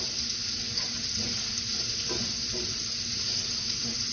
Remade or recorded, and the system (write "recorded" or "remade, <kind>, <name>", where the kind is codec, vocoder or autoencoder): recorded